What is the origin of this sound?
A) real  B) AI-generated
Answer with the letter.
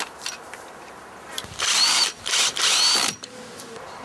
B